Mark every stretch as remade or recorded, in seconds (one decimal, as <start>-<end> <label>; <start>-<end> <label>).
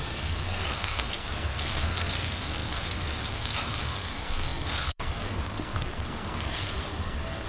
0.0-7.5 remade